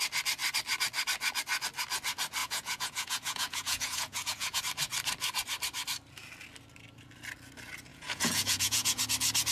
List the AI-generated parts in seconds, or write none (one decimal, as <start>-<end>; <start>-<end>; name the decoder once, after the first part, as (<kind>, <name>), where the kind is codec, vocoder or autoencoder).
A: 2.4-4.6 (vocoder, Vocos); 7.9-9.0

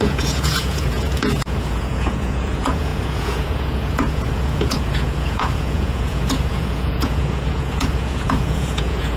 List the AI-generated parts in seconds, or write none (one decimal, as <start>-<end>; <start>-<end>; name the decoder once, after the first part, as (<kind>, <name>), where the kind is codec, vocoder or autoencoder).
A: 0.0-9.2 (vocoder, Vocos)

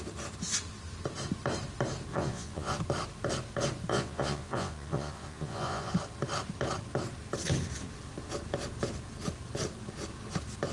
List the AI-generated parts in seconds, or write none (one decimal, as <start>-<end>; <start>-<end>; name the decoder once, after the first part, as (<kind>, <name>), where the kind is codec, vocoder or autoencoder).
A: 2.1-2.8 (vocoder, Vocos); 3.9-5.9

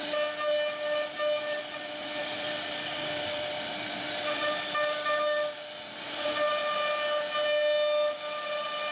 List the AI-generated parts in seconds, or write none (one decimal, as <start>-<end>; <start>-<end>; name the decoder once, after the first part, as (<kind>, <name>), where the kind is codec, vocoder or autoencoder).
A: none

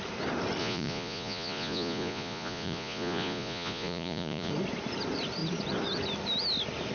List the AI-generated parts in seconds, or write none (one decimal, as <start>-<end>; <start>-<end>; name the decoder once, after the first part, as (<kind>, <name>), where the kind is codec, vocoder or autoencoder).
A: 0.6-4.5 (vocoder, Vocos)

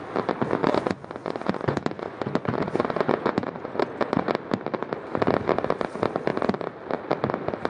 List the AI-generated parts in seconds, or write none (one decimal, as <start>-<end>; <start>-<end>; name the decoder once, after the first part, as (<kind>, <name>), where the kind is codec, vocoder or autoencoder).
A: 0.6-4.3 (vocoder, Vocos)